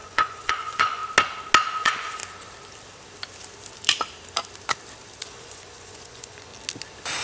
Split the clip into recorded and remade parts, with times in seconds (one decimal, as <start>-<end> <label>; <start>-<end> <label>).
0.0-1.0 remade; 1.0-1.8 recorded; 1.8-2.2 remade; 2.2-5.2 recorded; 5.2-6.5 remade; 6.5-7.2 recorded

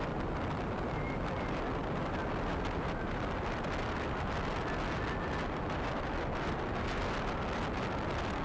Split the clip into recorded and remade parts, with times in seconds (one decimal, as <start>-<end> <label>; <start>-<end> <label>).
0.0-8.4 recorded

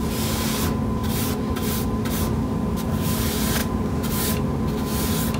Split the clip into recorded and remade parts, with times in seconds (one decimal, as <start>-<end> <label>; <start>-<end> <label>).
0.0-1.0 recorded; 1.0-1.5 remade; 1.5-3.6 recorded; 3.6-4.3 remade; 4.3-5.4 recorded